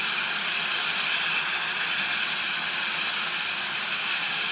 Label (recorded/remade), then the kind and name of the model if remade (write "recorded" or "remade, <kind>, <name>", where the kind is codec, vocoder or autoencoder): recorded